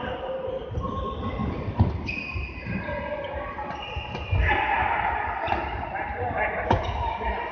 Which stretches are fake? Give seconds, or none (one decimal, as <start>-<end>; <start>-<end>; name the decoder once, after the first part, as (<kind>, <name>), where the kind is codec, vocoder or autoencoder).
none